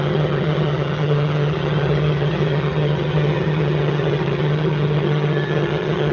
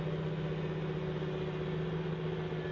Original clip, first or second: second